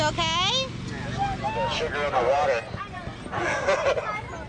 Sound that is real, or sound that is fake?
real